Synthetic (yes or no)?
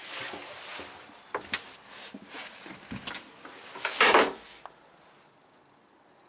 no